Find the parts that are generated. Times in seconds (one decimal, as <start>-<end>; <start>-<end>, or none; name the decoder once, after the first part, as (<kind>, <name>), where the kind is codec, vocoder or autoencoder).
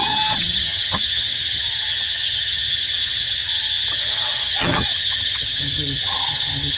0.0-6.8 (vocoder, HiFi-GAN)